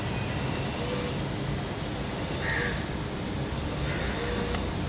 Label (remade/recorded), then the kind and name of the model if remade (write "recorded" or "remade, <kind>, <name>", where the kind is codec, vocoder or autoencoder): recorded